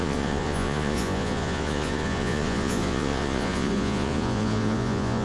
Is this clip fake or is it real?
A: fake